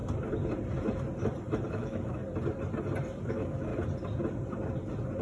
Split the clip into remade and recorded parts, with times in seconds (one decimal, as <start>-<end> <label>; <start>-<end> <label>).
0.0-1.7 recorded; 1.7-2.2 remade; 2.2-3.3 recorded; 3.3-3.7 remade; 3.7-5.2 recorded